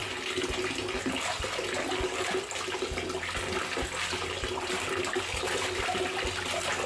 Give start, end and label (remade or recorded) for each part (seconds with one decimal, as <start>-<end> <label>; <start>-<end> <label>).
0.0-6.9 recorded